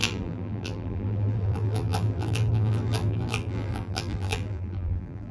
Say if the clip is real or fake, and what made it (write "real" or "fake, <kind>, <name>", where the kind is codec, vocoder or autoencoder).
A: fake, vocoder, BigVGAN v2